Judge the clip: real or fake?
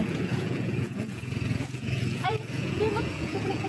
fake